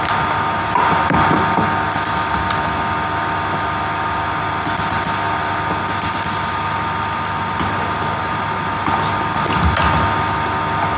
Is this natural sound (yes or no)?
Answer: yes